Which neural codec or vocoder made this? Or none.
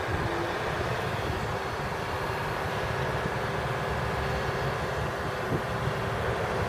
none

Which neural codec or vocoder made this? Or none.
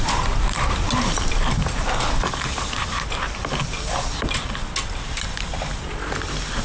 none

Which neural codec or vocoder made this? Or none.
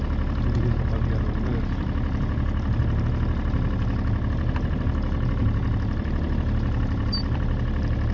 none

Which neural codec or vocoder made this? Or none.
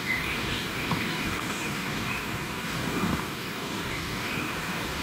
codec, DAC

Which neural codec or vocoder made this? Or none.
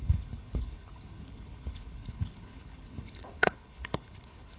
codec, HILCodec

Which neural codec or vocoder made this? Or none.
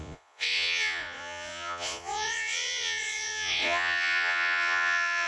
vocoder, Vocos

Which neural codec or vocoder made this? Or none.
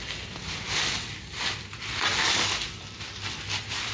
none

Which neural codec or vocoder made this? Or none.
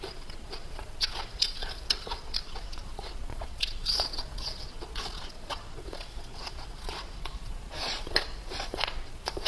vocoder, Vocos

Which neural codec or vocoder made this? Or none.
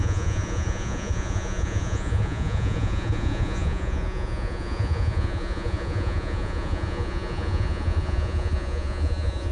vocoder, Vocos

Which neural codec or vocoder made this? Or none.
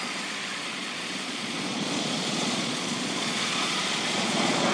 vocoder, Vocos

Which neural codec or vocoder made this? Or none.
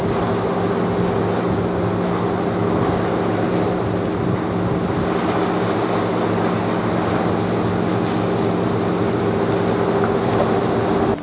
none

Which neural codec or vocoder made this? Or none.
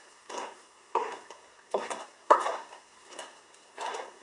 codec, SNAC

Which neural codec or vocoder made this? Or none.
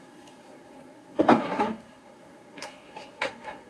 codec, SNAC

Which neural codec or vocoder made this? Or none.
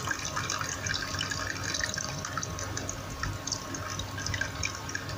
none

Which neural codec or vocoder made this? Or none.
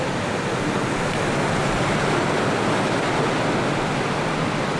none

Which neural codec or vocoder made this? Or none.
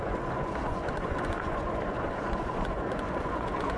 vocoder, Vocos